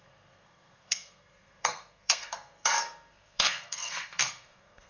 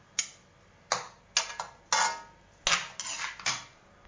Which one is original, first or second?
second